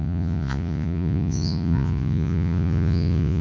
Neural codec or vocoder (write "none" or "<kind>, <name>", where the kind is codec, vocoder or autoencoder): vocoder, Vocos